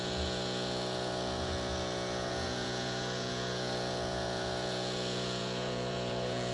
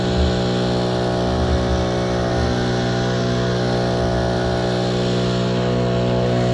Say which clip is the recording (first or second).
second